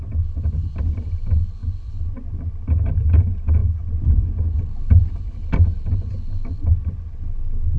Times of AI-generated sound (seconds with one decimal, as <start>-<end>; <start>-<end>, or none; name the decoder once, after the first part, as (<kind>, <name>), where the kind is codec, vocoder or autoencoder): none